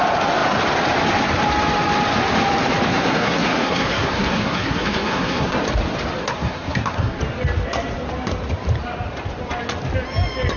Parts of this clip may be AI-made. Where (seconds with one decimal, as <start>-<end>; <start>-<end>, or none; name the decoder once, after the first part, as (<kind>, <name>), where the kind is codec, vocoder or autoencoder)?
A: 2.9-5.6 (codec, SNAC); 6.2-7.2